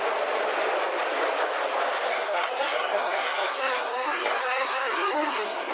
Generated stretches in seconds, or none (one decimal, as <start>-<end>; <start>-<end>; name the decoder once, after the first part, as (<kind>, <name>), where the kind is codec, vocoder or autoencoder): 2.1-5.7 (codec, SNAC)